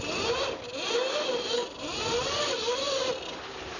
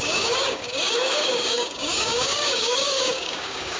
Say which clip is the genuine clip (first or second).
first